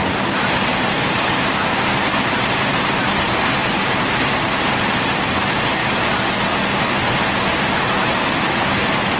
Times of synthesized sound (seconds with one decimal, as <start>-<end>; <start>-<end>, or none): none